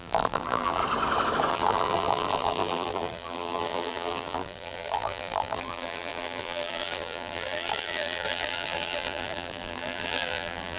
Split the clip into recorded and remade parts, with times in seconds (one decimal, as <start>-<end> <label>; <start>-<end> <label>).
0.0-0.8 remade; 0.8-1.5 recorded; 1.5-10.8 remade